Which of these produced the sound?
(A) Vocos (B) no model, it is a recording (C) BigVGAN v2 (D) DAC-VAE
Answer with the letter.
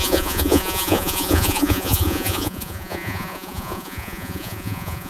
A